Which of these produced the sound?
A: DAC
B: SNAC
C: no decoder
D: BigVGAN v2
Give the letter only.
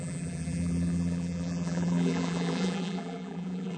D